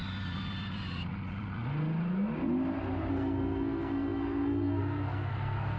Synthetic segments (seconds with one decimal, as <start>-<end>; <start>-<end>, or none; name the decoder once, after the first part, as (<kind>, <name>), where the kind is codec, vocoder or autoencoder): 3.1-5.8 (codec, SNAC)